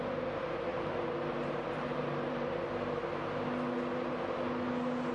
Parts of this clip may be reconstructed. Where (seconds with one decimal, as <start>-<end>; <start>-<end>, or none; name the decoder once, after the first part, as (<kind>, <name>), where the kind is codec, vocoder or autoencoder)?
0.7-2.7 (vocoder, BigVGAN v2)